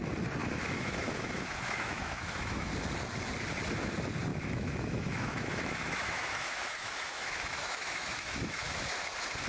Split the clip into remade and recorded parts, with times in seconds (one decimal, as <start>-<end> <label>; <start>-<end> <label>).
0.0-0.4 recorded; 0.4-2.7 remade; 2.7-4.3 recorded; 4.3-8.7 remade; 8.7-9.5 recorded